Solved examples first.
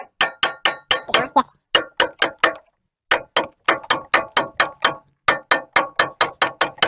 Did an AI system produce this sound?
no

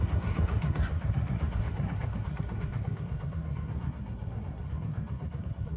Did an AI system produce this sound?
yes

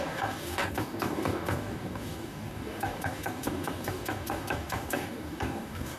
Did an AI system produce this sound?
yes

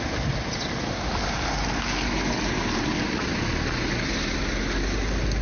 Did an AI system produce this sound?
no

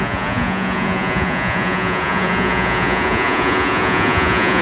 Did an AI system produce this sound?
yes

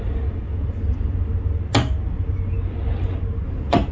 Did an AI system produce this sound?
no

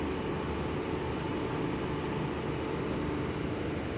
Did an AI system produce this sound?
no